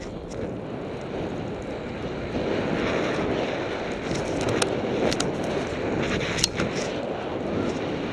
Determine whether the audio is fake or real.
real